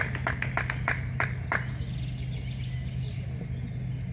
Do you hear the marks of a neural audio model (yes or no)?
no